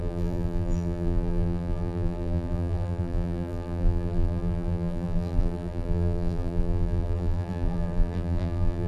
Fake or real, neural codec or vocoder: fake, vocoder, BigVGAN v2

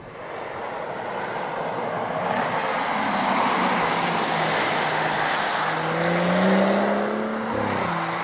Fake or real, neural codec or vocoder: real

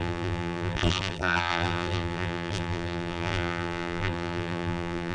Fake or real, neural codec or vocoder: fake, vocoder, BigVGAN v2